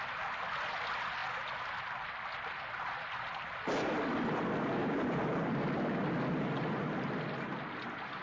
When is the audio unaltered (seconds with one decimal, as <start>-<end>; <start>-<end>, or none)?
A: 0.0-8.2

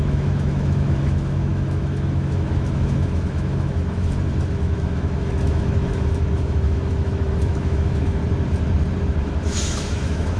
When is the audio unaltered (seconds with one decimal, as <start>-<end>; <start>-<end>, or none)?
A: 8.2-9.2

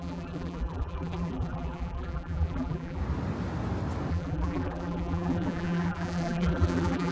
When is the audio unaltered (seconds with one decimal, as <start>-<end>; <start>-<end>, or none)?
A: 3.0-4.1

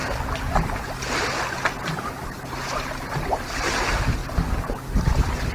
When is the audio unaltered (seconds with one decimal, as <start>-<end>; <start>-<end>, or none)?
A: 0.0-5.5